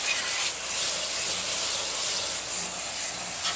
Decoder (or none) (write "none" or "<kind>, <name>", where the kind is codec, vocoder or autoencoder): none